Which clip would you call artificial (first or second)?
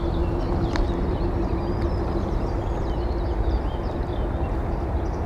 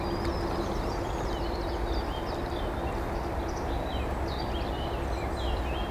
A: first